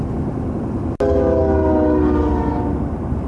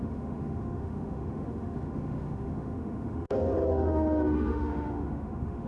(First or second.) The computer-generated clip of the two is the second